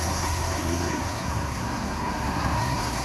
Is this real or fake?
fake